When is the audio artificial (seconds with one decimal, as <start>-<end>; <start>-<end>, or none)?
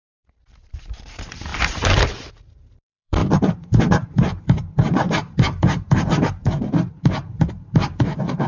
0.0-8.5